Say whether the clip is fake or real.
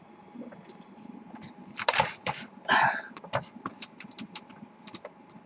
real